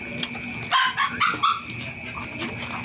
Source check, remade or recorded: recorded